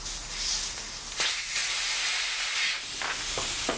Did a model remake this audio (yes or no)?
no